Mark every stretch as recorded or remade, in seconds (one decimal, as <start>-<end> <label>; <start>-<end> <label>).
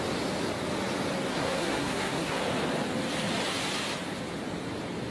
0.0-1.3 recorded; 1.3-2.4 remade; 2.4-5.1 recorded